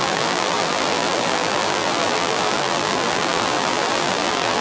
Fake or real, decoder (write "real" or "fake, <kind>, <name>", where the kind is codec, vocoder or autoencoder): fake, vocoder, BigVGAN v2